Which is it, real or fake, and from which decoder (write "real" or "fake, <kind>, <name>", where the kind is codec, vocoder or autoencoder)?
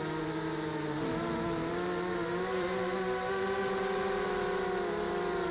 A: fake, vocoder, BigVGAN v2